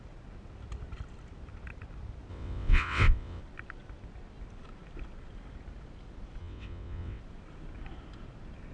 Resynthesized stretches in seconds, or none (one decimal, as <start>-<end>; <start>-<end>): 2.3-3.4; 6.4-7.2